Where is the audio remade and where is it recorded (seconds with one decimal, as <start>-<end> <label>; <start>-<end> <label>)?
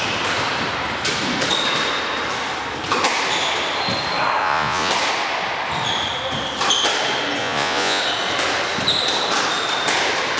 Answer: 0.0-4.4 recorded; 4.4-4.9 remade; 4.9-7.4 recorded; 7.4-8.0 remade; 8.0-10.4 recorded